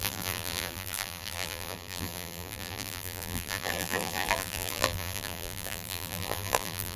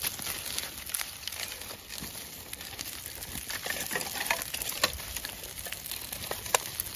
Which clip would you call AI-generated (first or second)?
first